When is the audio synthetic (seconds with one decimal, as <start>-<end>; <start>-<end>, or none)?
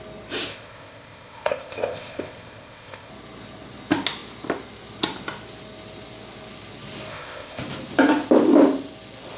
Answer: 0.5-3.1; 7.1-7.6